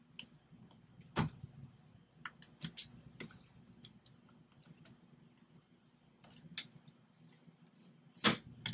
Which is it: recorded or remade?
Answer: recorded